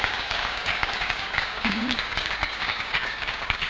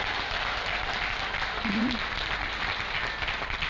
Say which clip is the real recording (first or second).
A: second